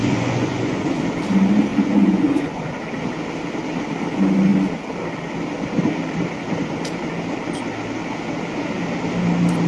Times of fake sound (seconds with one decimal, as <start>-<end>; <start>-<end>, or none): 0.0-1.0; 1.7-2.8